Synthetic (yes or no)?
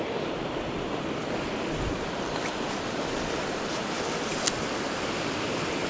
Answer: no